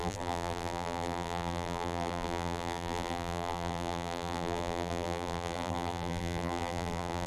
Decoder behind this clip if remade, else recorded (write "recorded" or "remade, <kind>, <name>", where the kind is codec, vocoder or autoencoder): remade, vocoder, BigVGAN v2